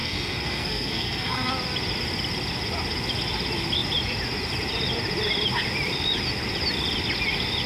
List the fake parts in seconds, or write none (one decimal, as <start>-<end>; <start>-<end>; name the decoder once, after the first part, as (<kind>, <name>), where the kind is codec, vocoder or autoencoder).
0.0-1.5 (codec, SNAC)